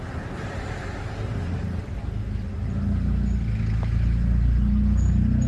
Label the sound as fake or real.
real